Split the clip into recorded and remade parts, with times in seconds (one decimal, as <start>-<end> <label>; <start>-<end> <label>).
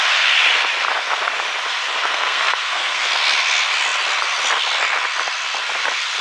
0.0-2.0 recorded; 2.0-3.1 remade; 3.1-6.2 recorded